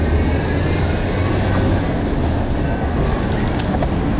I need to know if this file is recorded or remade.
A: recorded